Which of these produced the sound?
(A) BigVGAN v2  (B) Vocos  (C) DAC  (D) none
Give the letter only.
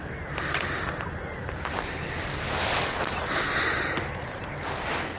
D